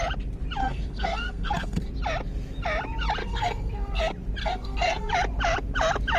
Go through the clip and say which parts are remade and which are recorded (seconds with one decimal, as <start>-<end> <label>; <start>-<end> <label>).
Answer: 0.0-0.6 recorded; 0.6-1.9 remade; 1.9-3.2 recorded; 3.2-4.0 remade; 4.0-4.4 recorded; 4.4-5.1 remade; 5.1-6.2 recorded